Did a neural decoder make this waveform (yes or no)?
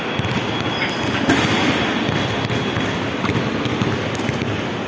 no